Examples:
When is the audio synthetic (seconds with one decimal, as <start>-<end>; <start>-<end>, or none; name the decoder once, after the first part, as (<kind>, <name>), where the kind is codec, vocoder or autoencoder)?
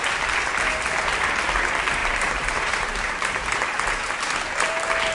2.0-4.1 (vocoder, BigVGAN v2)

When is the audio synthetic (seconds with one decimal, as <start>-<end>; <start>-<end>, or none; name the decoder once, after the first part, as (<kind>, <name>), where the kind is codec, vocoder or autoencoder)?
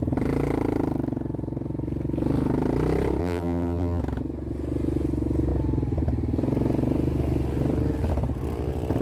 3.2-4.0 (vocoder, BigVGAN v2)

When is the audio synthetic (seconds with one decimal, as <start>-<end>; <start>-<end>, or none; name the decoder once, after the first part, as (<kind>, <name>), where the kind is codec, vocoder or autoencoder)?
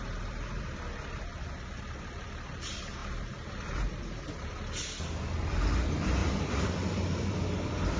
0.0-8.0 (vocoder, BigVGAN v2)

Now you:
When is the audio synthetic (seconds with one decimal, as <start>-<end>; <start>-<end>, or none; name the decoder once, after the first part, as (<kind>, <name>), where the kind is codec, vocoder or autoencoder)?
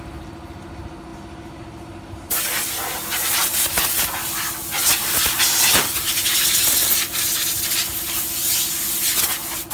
none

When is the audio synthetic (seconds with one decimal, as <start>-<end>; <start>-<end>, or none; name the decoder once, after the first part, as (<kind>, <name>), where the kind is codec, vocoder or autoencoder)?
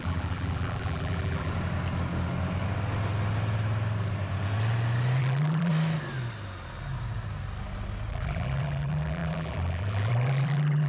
0.0-1.5 (vocoder, BigVGAN v2); 5.2-5.7; 8.1-10.9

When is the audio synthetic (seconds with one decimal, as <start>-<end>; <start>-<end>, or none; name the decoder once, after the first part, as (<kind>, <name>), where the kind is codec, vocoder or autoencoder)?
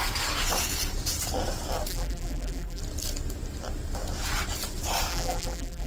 1.9-2.8 (vocoder, BigVGAN v2); 5.1-5.9